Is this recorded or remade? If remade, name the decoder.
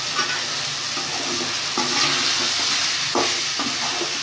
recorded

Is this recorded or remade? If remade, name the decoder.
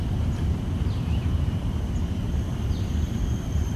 remade, vocoder, BigVGAN v2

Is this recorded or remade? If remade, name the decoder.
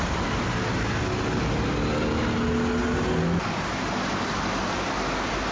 recorded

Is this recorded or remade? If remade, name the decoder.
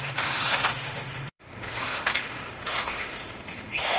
remade, autoencoder, DAC-VAE